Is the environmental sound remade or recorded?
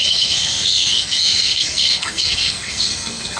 remade